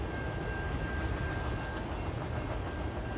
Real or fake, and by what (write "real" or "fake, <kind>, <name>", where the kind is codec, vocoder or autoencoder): real